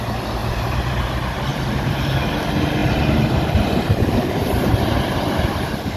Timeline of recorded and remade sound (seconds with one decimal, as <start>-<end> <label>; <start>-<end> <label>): 0.0-0.4 recorded; 0.4-1.1 remade; 1.1-1.5 recorded; 1.5-2.4 remade; 2.4-2.8 recorded; 2.8-5.0 remade; 5.0-6.0 recorded